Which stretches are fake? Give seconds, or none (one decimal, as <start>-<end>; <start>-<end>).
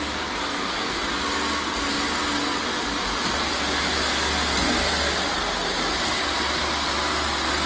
0.5-1.0